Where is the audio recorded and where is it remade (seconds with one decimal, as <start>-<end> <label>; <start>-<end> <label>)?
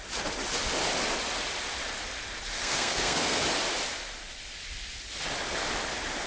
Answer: 0.0-2.6 recorded; 2.6-3.4 remade; 3.4-6.3 recorded